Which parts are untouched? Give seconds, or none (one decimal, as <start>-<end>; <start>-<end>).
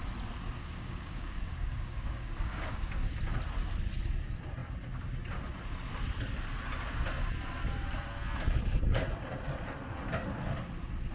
0.0-0.6; 3.2-11.1